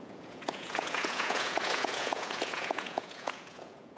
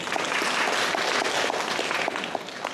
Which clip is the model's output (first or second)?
first